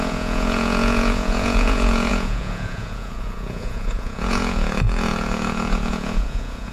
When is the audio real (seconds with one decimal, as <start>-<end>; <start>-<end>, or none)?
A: none